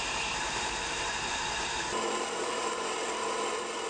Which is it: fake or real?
fake